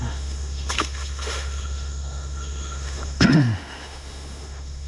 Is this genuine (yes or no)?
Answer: no